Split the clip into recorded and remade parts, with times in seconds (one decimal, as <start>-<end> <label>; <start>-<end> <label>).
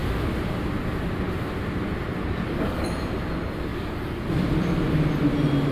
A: 0.0-2.2 recorded; 2.2-2.9 remade; 2.9-3.7 recorded; 3.7-4.2 remade; 4.2-5.7 recorded